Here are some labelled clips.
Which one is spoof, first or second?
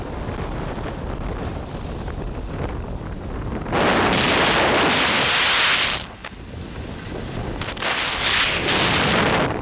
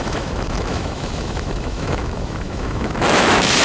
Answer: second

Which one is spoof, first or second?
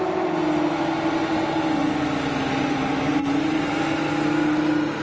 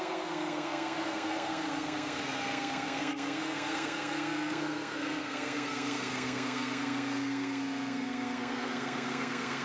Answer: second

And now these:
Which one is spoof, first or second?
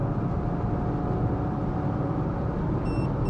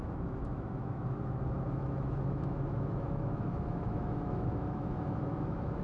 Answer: second